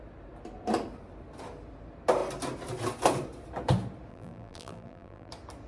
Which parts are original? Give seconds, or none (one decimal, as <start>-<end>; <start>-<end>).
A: 0.0-4.1; 5.3-5.7